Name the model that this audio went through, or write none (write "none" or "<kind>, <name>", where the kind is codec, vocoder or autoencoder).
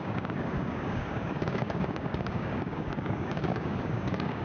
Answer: codec, DAC